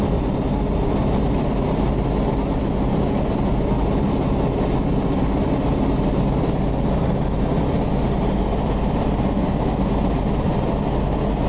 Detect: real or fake real